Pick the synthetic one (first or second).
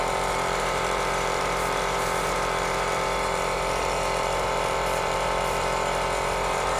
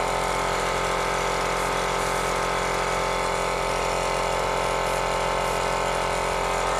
first